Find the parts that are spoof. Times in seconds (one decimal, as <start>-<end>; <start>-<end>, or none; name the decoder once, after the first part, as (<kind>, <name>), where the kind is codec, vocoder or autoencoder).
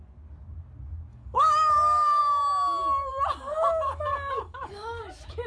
1.1-2.2 (codec, DAC); 3.5-5.0